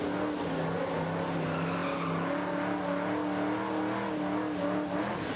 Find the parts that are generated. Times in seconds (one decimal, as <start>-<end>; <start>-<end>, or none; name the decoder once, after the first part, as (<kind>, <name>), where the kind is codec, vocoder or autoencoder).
none